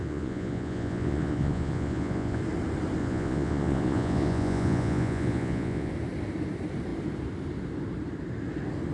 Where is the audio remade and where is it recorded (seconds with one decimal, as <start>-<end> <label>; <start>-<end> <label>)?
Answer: 0.0-2.4 remade; 2.4-3.0 recorded; 3.0-5.9 remade; 5.9-8.9 recorded